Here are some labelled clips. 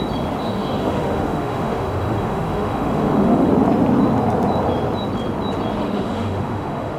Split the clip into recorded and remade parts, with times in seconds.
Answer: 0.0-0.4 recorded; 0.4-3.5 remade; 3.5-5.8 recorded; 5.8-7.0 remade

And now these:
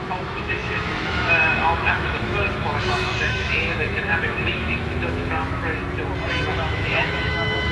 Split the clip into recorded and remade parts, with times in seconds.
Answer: 0.0-5.8 remade; 5.8-6.5 recorded; 6.5-7.7 remade

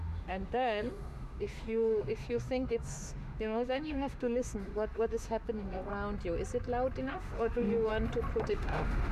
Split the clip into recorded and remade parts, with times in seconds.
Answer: 0.0-5.9 remade; 5.9-7.0 recorded; 7.0-7.9 remade; 7.9-8.5 recorded; 8.5-9.1 remade

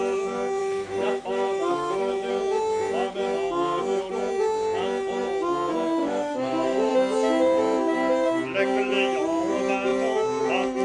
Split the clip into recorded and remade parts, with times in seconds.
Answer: 0.0-0.6 recorded; 0.6-2.3 remade; 2.3-6.0 recorded; 6.0-6.9 remade; 6.9-10.8 recorded